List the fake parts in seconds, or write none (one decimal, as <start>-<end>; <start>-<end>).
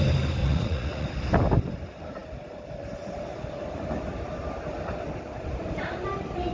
0.4-1.1